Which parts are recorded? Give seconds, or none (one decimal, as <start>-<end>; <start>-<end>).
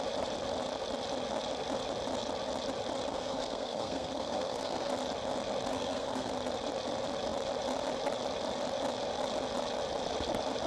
0.0-3.1; 4.9-5.7; 6.3-10.7